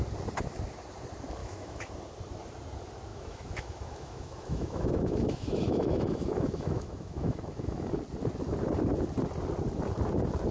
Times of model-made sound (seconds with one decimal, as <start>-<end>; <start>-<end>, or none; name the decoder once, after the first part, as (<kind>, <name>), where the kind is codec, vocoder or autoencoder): 1.4-1.9 (autoencoder, DAC-VAE); 3.1-7.9